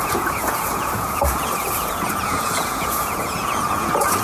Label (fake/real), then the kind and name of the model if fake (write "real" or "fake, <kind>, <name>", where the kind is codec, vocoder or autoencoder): fake, vocoder, Vocos